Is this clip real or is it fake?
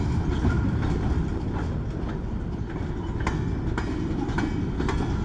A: real